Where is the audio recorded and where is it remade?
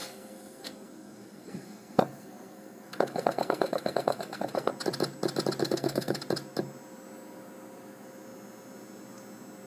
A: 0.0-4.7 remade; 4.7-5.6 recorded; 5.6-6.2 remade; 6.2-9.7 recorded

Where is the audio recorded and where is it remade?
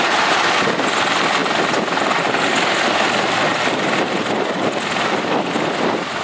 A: 0.0-6.2 recorded